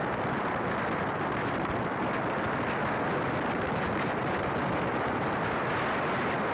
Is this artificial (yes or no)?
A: no